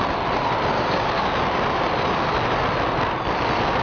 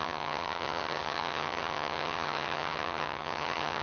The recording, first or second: first